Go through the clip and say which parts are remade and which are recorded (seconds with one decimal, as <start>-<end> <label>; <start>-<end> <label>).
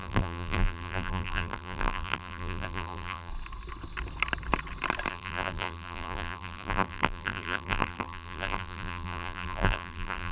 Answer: 0.0-3.3 remade; 3.3-5.1 recorded; 5.1-10.3 remade